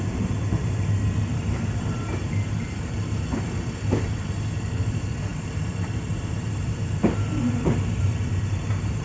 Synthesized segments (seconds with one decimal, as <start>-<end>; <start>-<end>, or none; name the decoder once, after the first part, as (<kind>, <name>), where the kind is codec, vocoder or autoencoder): 0.0-9.0 (vocoder, BigVGAN v2)